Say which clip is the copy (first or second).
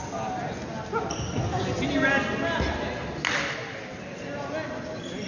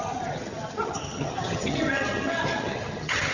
second